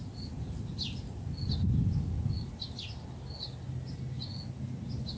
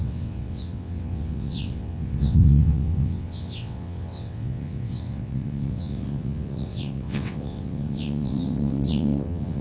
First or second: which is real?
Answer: first